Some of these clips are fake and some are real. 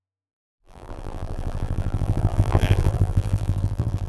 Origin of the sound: fake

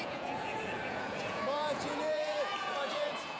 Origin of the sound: fake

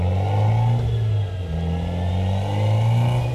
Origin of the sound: real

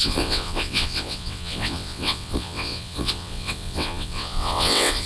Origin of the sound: fake